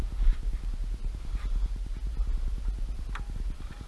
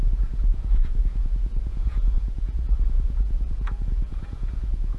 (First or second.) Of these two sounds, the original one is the first